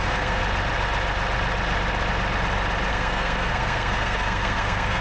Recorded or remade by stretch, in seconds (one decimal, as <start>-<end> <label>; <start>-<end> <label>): 0.0-0.4 remade; 0.4-2.9 recorded; 2.9-5.0 remade